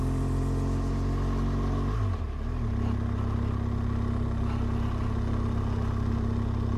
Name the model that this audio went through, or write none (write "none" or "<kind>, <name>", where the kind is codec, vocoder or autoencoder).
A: none